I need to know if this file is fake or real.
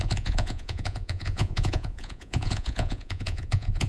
fake